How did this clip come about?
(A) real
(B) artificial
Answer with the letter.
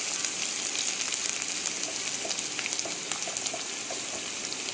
A